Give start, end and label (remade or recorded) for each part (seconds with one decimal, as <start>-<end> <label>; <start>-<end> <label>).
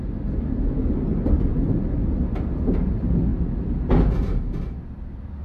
0.0-5.4 recorded